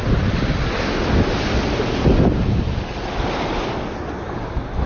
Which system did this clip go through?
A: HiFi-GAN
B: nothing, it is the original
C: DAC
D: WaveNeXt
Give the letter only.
B